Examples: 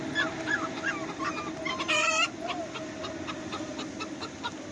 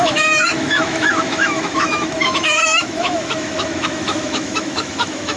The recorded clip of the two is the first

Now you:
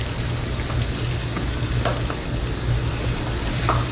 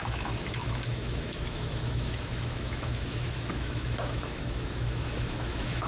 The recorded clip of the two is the first